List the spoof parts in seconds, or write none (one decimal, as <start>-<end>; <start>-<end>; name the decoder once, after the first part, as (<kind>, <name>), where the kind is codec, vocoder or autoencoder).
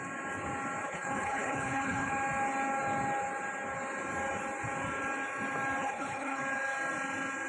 0.8-2.1 (codec, HILCodec); 5.8-6.4